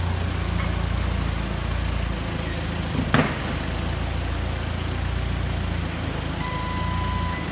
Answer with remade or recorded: recorded